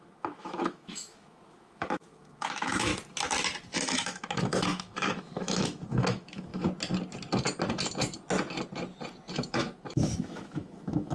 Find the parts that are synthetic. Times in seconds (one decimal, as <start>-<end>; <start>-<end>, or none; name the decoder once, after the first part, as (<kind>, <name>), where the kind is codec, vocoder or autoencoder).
0.0-2.9 (autoencoder, DAC-VAE); 3.7-6.5; 9.3-11.1